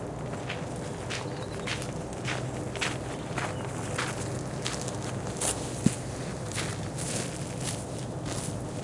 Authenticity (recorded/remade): recorded